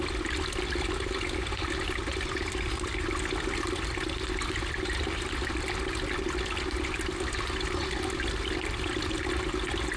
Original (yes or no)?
yes